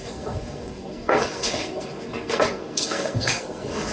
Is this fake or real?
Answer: fake